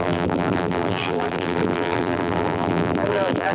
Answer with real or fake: fake